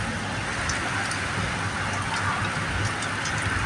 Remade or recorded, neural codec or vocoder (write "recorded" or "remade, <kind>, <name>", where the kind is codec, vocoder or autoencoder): recorded